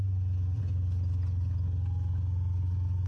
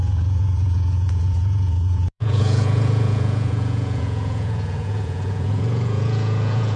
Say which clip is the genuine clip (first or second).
first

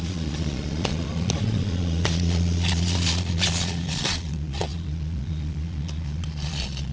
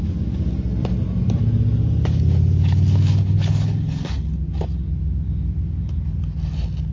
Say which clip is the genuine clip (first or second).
second